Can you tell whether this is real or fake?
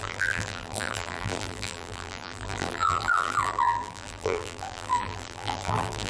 fake